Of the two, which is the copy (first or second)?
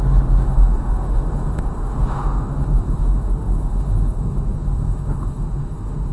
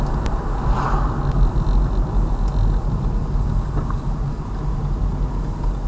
first